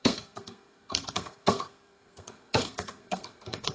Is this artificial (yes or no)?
yes